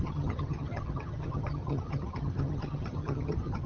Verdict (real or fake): fake